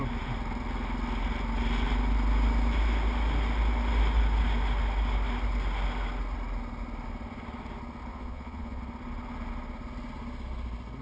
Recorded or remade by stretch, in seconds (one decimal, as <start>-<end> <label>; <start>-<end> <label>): 0.0-8.1 recorded; 8.1-8.8 remade; 8.8-11.0 recorded